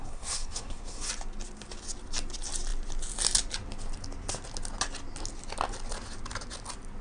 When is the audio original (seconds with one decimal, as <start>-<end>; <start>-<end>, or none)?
1.1-7.0

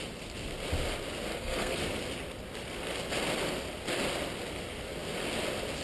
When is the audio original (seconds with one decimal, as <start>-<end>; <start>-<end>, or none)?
0.0-1.3; 1.8-5.8

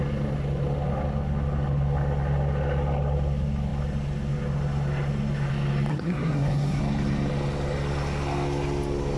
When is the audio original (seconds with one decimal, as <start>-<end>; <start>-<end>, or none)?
0.0-5.9; 6.8-9.2

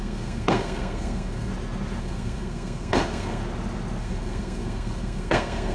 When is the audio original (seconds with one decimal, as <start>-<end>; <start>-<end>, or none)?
1.5-2.0; 3.4-4.0

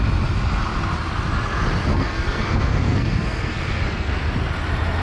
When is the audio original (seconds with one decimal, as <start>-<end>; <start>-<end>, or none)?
0.0-1.9; 4.1-5.0